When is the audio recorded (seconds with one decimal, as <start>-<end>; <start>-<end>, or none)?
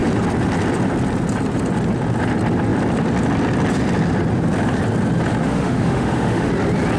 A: 0.0-5.4; 6.5-7.0